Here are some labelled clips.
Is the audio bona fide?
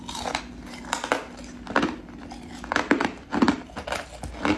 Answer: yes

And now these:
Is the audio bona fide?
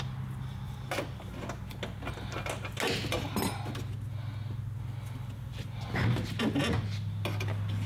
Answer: yes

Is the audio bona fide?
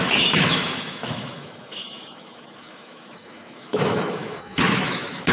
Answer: no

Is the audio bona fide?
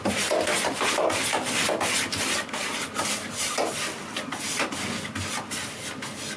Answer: yes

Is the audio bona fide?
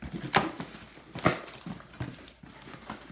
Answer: yes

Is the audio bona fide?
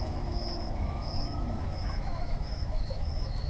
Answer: no